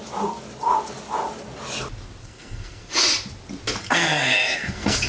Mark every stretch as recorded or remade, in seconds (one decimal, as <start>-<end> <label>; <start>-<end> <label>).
0.0-2.2 recorded; 2.2-2.9 remade; 2.9-3.8 recorded; 3.8-5.1 remade